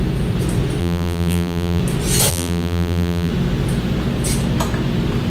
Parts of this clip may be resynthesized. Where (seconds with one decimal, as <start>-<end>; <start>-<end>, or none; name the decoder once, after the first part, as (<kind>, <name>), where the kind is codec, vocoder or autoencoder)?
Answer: 0.8-1.8 (vocoder, BigVGAN v2); 2.3-3.3